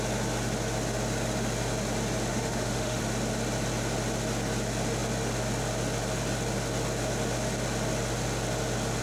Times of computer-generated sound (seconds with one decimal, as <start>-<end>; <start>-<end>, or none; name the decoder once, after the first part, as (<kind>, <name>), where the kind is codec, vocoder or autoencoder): 2.3-3.0 (autoencoder, DAC-VAE)